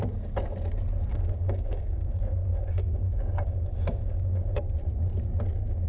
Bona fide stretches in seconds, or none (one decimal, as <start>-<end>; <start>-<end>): 0.0-1.1; 4.6-5.9